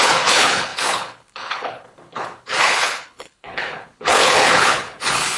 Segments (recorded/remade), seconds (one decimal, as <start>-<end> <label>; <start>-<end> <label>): 0.0-5.4 remade